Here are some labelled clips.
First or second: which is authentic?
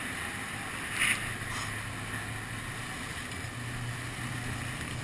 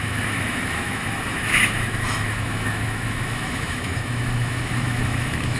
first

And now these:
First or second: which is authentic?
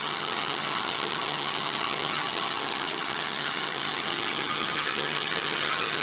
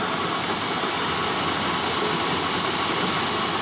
second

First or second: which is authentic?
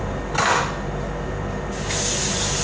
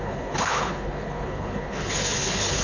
first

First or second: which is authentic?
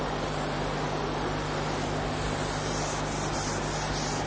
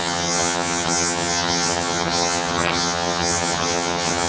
first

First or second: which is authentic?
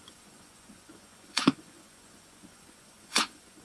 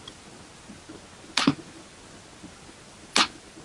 second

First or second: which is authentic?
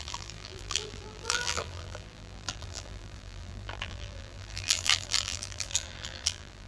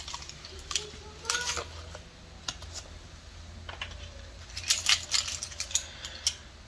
second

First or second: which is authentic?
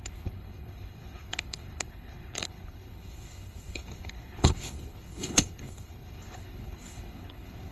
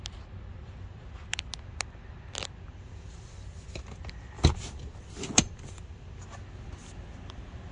second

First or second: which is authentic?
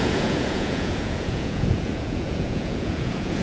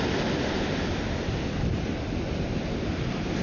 second